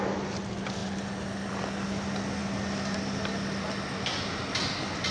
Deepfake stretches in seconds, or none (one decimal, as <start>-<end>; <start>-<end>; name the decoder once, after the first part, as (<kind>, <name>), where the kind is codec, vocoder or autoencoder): 0.8-1.5 (vocoder, BigVGAN v2)